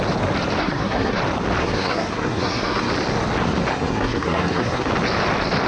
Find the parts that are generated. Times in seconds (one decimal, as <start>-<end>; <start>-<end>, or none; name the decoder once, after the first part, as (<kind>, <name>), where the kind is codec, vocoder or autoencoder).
0.6-1.2 (codec, SNAC); 1.6-2.9; 3.7-4.9